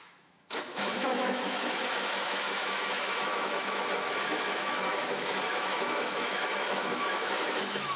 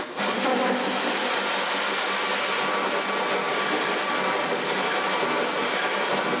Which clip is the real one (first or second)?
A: second